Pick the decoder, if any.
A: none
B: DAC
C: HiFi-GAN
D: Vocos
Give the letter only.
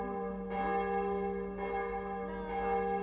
A